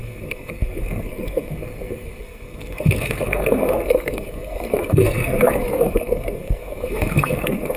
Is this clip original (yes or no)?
no